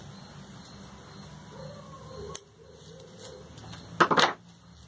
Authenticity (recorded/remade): recorded